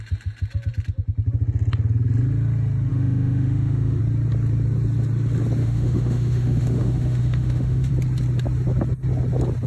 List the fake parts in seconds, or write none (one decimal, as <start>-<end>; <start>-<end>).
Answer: 2.9-4.0; 5.6-7.9